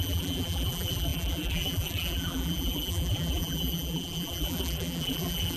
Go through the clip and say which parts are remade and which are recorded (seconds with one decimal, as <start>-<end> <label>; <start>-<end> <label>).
0.0-5.6 remade